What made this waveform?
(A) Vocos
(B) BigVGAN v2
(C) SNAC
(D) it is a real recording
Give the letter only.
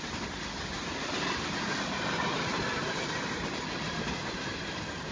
D